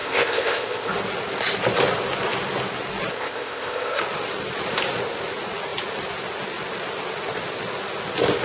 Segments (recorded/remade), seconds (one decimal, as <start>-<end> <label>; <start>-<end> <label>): 0.0-0.9 remade; 0.9-3.1 recorded; 3.1-4.0 remade; 4.0-8.4 recorded